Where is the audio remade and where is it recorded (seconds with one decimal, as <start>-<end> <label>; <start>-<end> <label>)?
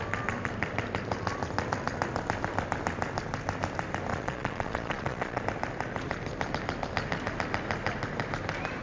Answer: 0.0-4.1 recorded; 4.1-5.4 remade; 5.4-8.8 recorded